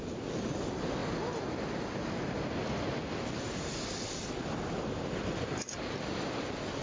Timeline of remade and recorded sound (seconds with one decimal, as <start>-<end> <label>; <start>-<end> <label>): 0.0-6.8 recorded